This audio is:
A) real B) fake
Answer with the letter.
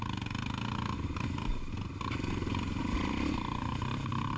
A